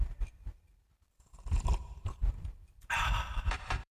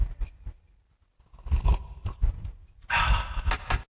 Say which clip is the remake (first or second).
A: first